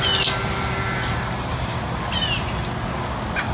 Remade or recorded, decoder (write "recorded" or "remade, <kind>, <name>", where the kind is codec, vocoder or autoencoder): recorded